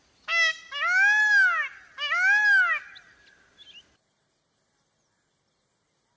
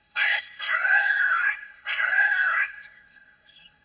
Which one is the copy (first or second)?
second